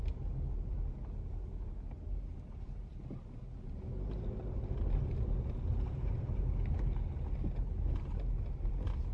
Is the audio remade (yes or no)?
no